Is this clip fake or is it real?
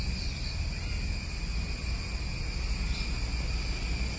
real